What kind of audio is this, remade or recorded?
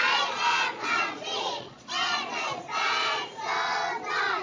remade